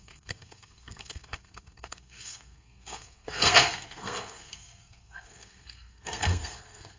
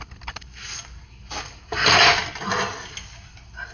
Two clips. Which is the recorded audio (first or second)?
second